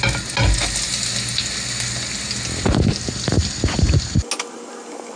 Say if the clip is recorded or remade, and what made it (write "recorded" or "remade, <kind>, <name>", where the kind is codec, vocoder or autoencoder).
recorded